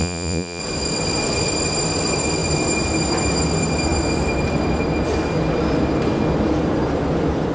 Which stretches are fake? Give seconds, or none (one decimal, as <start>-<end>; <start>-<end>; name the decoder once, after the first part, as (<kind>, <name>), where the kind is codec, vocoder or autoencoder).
0.0-0.6 (vocoder, Vocos)